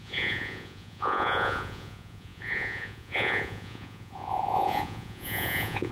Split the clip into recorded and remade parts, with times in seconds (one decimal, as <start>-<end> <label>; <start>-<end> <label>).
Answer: 0.0-5.9 remade